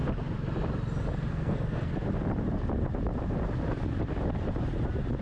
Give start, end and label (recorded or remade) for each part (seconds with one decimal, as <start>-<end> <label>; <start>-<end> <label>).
0.0-1.3 recorded; 1.3-1.9 remade; 1.9-5.2 recorded

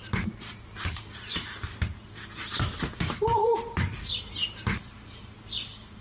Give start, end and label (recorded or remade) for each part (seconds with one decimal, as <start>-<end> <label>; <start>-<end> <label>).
0.0-6.0 remade

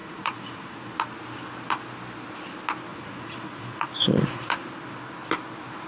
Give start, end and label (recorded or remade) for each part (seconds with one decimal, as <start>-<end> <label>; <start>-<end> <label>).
0.0-0.9 remade; 0.9-2.9 recorded; 2.9-4.6 remade; 4.6-5.9 recorded

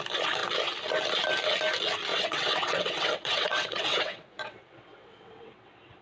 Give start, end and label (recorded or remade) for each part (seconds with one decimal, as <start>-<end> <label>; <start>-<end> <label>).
0.0-2.1 recorded; 2.1-6.0 remade

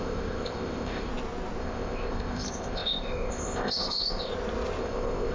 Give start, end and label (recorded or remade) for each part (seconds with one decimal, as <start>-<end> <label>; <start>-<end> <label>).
0.0-1.1 remade; 1.1-1.6 recorded; 1.6-4.3 remade; 4.3-4.8 recorded; 4.8-5.3 remade

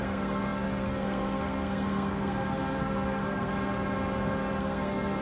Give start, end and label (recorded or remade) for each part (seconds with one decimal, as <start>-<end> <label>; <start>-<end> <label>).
0.0-3.5 remade; 3.5-4.6 recorded; 4.6-5.2 remade

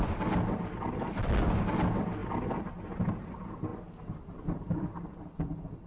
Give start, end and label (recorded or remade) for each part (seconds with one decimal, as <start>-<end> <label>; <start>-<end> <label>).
0.0-5.9 recorded

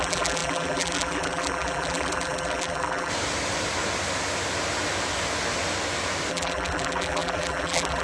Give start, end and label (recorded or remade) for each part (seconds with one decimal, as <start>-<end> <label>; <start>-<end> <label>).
0.0-3.1 remade; 3.1-6.3 recorded; 6.3-8.0 remade